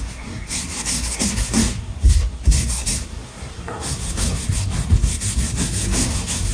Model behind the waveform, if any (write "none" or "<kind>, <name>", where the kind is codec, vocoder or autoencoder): codec, SNAC